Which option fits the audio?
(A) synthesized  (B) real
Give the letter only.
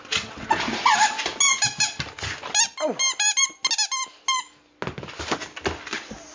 B